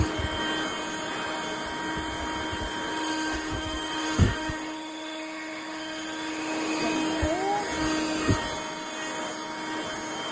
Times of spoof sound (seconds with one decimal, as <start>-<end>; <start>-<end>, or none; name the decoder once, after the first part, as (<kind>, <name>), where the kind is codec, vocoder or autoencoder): 2.9-6.8 (autoencoder, DAC-VAE)